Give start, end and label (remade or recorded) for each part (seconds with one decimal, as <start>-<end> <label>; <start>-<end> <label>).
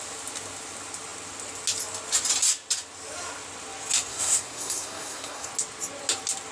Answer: 0.0-4.1 recorded; 4.1-5.5 remade; 5.5-6.5 recorded